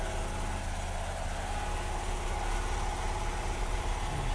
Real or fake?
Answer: real